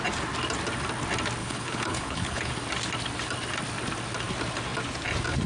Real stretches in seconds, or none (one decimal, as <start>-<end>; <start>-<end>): 0.0-1.4; 2.5-5.5